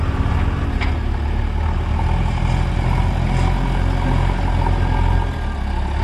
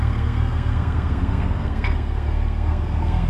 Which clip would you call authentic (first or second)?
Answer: first